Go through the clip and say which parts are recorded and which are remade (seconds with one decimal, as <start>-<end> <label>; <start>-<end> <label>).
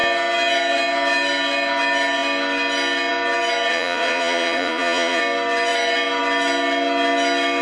0.0-3.7 recorded; 3.7-5.2 remade; 5.2-7.6 recorded